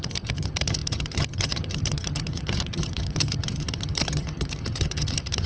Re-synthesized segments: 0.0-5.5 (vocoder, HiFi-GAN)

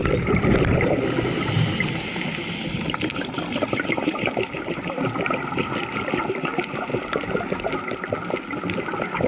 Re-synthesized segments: none

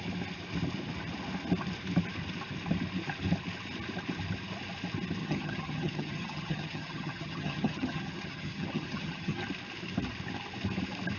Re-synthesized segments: 5.2-9.4 (vocoder, HiFi-GAN)

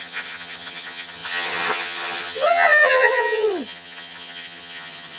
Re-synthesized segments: 0.0-5.2 (vocoder, HiFi-GAN)

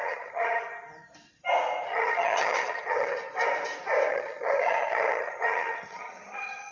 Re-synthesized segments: 0.0-0.6 (vocoder, HiFi-GAN); 1.9-3.2; 4.1-6.7